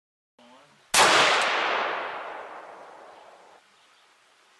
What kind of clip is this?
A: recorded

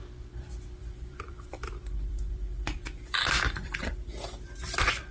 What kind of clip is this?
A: remade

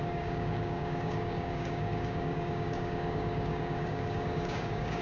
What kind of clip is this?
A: remade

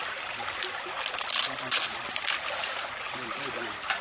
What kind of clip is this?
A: recorded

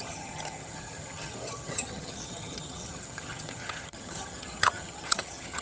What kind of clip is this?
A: remade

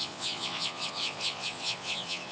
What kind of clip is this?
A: remade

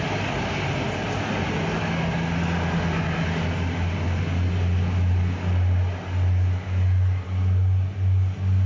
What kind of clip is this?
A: recorded